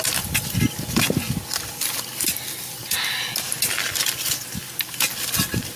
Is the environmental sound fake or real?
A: real